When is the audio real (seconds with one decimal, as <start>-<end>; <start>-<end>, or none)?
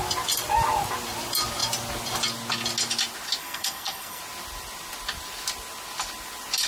0.0-3.4; 4.2-6.7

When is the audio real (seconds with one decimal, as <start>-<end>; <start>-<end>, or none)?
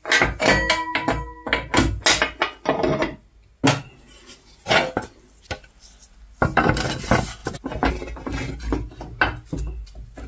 0.0-10.3